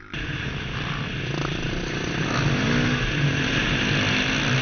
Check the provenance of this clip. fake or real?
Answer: real